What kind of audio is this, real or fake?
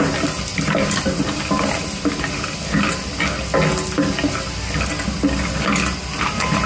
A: real